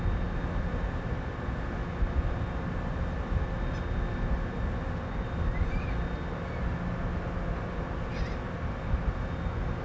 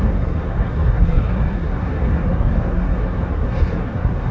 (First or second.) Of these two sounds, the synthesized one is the second